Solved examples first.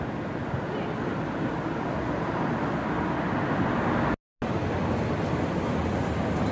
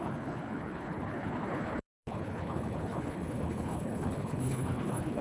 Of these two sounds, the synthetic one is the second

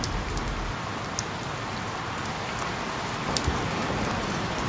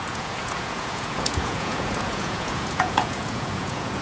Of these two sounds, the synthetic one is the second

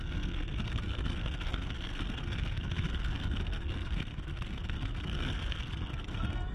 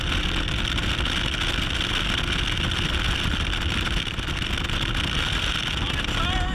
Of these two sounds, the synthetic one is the first